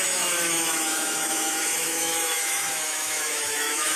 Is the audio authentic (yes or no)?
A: no